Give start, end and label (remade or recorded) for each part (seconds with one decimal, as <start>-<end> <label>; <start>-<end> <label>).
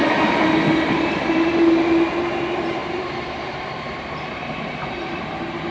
0.0-1.3 recorded; 1.3-5.7 remade